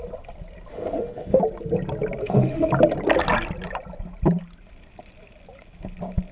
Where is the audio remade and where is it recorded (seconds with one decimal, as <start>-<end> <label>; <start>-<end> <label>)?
0.0-0.7 recorded; 0.7-1.4 remade; 1.4-2.2 recorded; 2.2-2.7 remade; 2.7-6.3 recorded